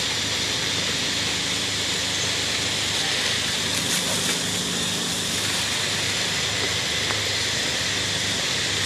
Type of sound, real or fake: real